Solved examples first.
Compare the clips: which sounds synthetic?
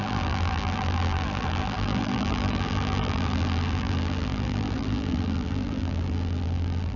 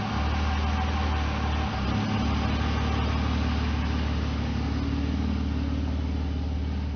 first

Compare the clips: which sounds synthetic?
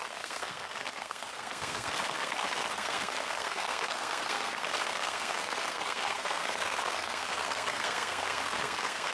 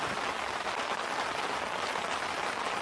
first